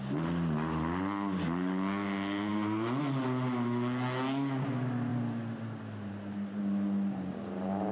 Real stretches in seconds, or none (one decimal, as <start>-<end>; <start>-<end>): 0.0-7.9